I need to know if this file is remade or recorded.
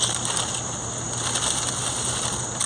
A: recorded